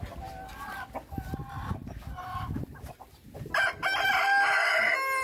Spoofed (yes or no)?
no